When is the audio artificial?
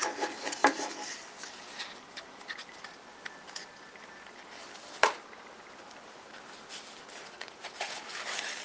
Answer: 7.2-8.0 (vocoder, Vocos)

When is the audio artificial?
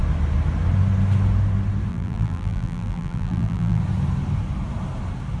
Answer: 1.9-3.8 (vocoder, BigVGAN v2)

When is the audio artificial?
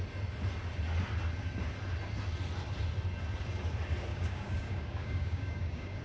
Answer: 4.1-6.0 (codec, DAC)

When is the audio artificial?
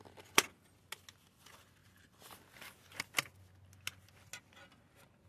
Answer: none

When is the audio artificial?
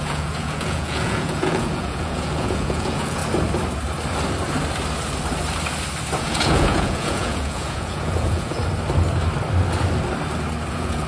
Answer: 0.0-3.2 (vocoder, Vocos); 6.2-8.6; 10.7-11.1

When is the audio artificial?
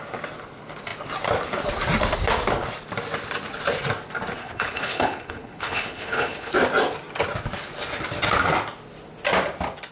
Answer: 4.4-6.5 (codec, HILCodec)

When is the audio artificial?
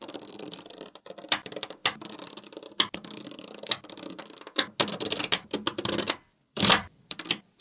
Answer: 0.0-1.8 (vocoder, BigVGAN v2); 6.4-7.6